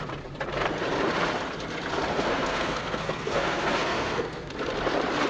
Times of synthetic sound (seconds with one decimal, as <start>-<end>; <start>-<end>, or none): 2.1-4.5